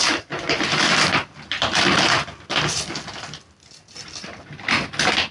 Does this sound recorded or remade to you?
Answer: recorded